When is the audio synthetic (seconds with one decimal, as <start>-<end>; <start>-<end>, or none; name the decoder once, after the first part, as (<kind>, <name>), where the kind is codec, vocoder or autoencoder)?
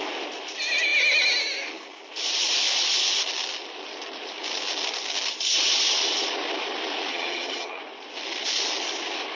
7.1-7.8 (vocoder, HiFi-GAN)